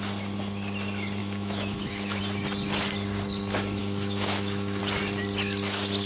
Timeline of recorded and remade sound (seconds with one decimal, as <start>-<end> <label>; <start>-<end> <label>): 0.0-1.2 recorded; 1.2-2.2 remade; 2.2-3.8 recorded; 3.8-4.8 remade; 4.8-6.1 recorded